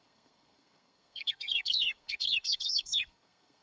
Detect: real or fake fake